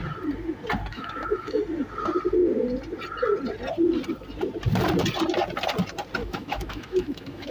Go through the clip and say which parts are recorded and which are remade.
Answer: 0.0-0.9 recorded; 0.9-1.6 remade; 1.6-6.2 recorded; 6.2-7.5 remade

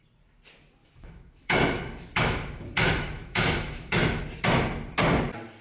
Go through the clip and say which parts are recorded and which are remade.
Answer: 0.0-0.8 recorded; 0.8-4.2 remade; 4.2-5.6 recorded